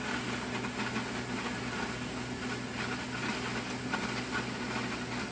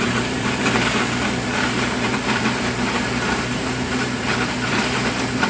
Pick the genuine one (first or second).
first